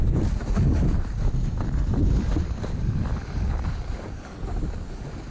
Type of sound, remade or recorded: recorded